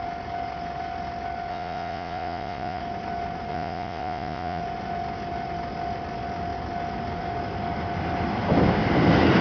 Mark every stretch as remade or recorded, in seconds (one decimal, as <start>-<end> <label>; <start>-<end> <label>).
0.0-1.5 recorded; 1.5-2.8 remade; 2.8-3.5 recorded; 3.5-4.6 remade; 4.6-9.4 recorded